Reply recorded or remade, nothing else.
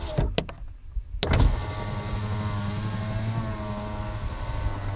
recorded